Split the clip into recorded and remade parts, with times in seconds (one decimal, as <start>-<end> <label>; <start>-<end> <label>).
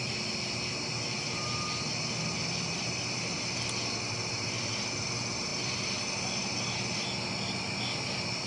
0.0-8.5 recorded